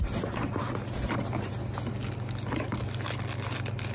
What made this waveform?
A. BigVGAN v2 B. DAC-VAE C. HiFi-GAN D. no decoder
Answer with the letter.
D